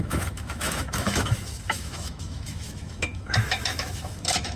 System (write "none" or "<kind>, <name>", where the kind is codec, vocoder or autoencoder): autoencoder, DAC-VAE